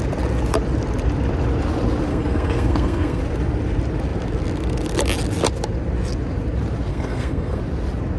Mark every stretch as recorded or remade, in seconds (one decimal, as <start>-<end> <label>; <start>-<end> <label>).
0.0-2.1 recorded; 2.1-3.2 remade; 3.2-6.9 recorded; 6.9-7.6 remade; 7.6-8.2 recorded